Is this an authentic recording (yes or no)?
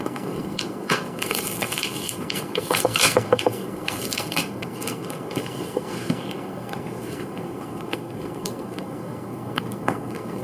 no